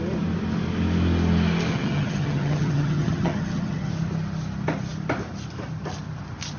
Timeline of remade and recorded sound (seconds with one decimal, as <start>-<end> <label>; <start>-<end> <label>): 0.0-1.7 recorded; 1.7-3.9 remade; 3.9-6.6 recorded

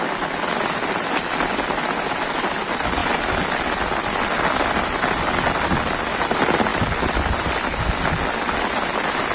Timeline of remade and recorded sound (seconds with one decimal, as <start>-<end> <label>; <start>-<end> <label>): 0.0-9.3 recorded

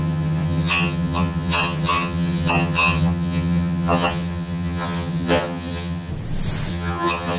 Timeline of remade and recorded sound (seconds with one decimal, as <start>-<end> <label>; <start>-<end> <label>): 0.0-6.1 remade; 6.1-6.7 recorded; 6.7-7.4 remade

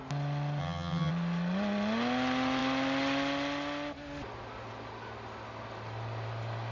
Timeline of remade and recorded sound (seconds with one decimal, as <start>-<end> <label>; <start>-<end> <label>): 0.0-0.6 recorded; 0.6-1.1 remade; 1.1-6.7 recorded

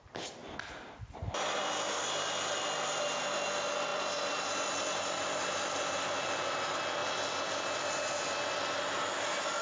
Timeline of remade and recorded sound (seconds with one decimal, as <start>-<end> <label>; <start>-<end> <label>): 0.0-9.6 recorded